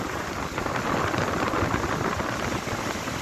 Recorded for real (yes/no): no